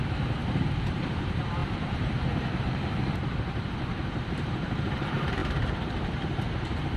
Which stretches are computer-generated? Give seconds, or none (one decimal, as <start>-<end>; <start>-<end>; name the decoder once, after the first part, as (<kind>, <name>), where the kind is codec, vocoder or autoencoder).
0.0-7.0 (vocoder, BigVGAN v2)

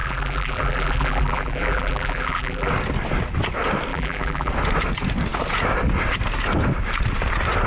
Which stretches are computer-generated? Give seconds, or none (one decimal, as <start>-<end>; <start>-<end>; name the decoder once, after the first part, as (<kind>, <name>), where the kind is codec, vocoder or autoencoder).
0.0-2.7 (vocoder, BigVGAN v2); 3.9-4.5

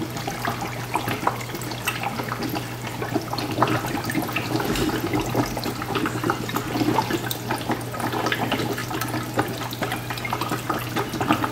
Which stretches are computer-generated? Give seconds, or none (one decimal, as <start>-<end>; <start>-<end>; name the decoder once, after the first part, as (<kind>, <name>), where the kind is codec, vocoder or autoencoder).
none